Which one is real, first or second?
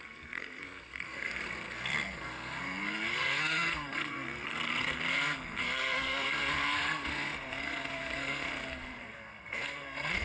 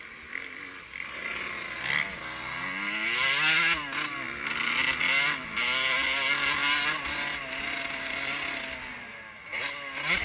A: second